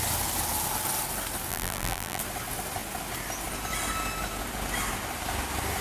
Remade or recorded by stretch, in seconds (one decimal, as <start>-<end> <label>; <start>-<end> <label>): 0.0-1.5 recorded; 1.5-2.2 remade; 2.2-5.8 recorded